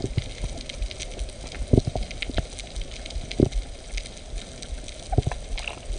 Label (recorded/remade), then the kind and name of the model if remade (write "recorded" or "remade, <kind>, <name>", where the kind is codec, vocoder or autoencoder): recorded